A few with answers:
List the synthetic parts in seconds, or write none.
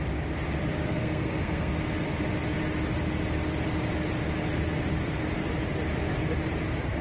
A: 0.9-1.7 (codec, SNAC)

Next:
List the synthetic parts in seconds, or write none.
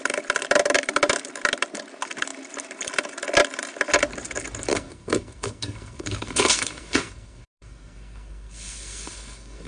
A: 4.7-9.7 (codec, SNAC)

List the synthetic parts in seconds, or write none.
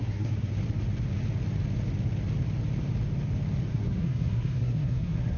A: 0.0-0.5 (codec, SNAC); 3.7-5.4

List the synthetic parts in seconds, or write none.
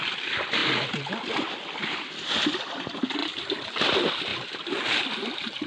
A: none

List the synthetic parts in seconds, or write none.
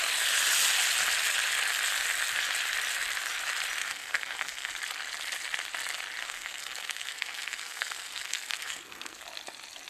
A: 3.8-4.7 (codec, SNAC); 6.2-9.2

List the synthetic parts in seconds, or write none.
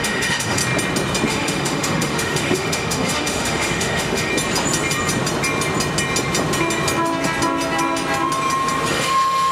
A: 0.0-0.6 (autoencoder, DAC-VAE); 1.3-4.3; 8.9-9.5